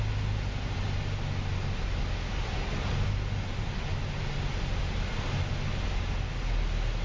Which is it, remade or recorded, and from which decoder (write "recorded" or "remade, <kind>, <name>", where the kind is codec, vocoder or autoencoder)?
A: recorded